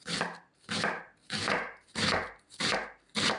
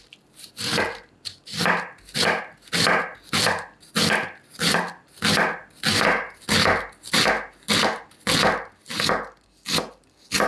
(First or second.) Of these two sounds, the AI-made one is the first